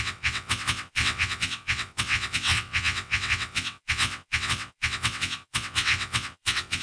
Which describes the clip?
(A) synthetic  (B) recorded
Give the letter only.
A